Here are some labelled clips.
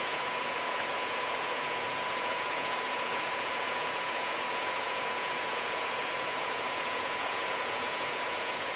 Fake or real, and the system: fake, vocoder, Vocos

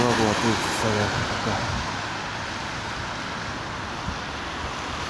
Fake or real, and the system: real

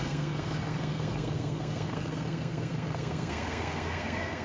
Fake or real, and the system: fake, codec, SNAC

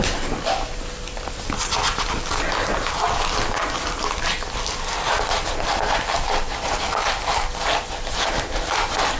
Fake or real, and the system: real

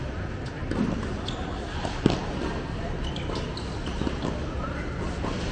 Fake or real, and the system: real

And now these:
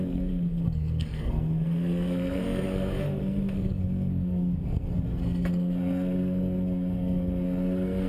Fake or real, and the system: fake, codec, SNAC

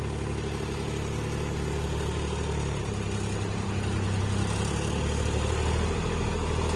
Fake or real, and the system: real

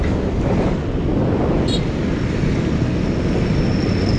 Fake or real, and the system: real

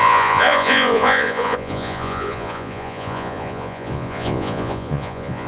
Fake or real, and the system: fake, vocoder, Vocos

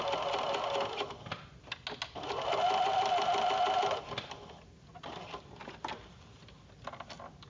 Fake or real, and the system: real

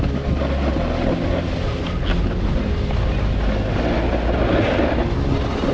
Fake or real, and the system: real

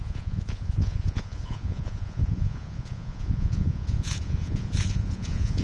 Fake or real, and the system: fake, vocoder, Vocos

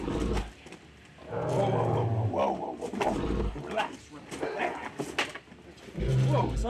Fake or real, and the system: real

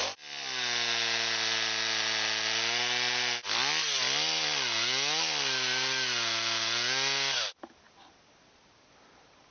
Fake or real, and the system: real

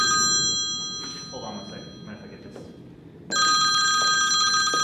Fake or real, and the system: real